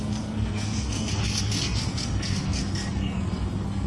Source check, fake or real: fake